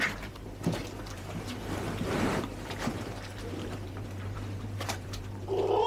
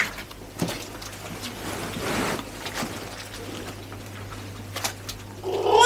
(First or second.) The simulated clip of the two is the first